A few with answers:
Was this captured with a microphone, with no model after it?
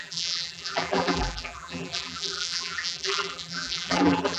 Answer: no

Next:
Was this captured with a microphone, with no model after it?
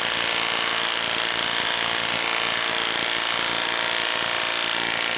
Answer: yes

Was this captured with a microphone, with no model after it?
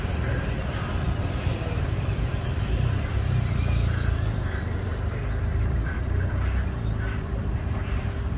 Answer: no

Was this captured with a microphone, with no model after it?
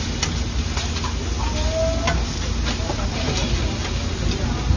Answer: yes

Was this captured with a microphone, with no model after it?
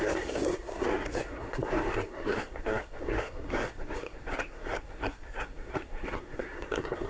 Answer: no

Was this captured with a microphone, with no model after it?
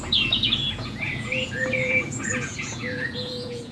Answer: no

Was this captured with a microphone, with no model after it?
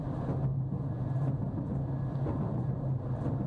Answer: yes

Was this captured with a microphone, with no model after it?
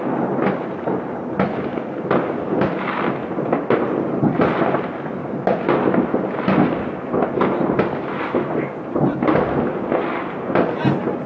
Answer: yes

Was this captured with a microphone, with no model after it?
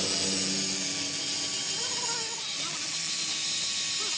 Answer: yes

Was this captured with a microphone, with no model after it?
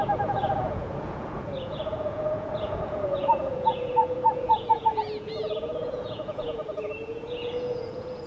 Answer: no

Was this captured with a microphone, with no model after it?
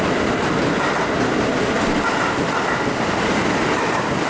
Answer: yes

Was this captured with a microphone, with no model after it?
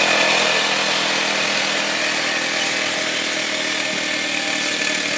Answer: yes